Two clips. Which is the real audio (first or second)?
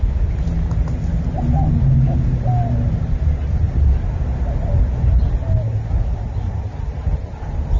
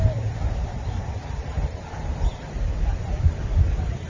first